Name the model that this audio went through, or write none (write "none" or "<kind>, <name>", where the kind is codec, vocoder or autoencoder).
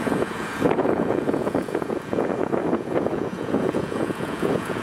vocoder, Vocos